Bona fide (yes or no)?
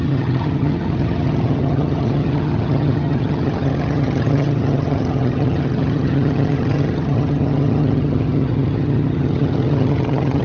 no